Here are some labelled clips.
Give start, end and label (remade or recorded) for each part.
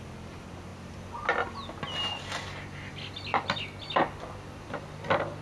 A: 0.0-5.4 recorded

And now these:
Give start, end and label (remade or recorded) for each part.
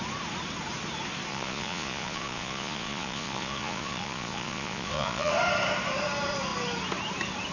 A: 0.0-1.3 recorded; 1.3-5.3 remade; 5.3-7.5 recorded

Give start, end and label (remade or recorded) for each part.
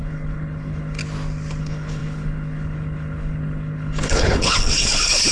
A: 0.0-1.0 remade; 1.0-1.6 recorded; 1.6-5.3 remade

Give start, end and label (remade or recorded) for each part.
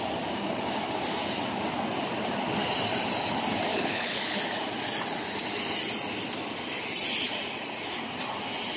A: 0.0-3.7 recorded; 3.7-4.4 remade; 4.4-8.8 recorded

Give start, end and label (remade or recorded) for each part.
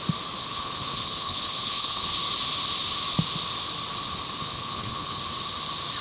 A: 0.0-0.4 recorded; 0.4-2.1 remade; 2.1-4.4 recorded; 4.4-5.2 remade; 5.2-6.0 recorded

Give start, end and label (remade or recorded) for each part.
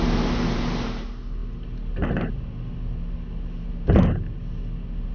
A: 0.0-5.1 recorded